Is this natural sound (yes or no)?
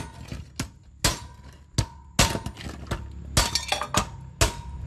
yes